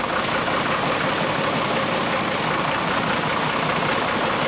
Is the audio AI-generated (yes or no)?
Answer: yes